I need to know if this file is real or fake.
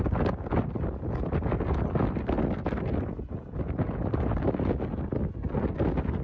real